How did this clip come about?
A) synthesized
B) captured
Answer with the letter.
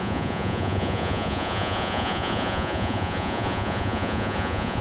A